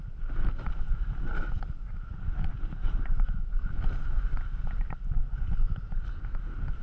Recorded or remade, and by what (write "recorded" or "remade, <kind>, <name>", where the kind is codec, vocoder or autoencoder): recorded